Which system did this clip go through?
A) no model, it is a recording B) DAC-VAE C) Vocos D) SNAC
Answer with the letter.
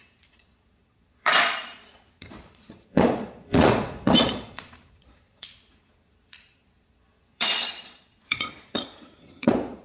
C